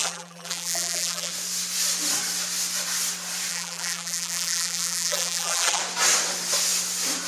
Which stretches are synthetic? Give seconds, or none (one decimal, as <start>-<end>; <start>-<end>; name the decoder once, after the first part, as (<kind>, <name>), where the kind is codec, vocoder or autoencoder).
0.0-1.3 (vocoder, BigVGAN v2); 3.5-5.8